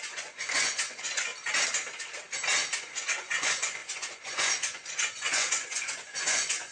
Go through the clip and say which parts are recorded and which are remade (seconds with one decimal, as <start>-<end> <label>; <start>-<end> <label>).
0.0-1.3 remade; 1.3-2.8 recorded; 2.8-6.7 remade